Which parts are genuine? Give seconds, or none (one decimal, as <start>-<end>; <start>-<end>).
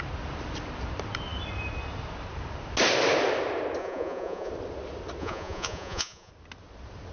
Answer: 0.0-3.8; 4.5-5.2; 6.3-7.1